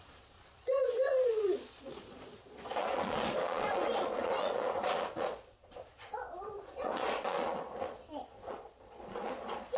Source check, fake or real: fake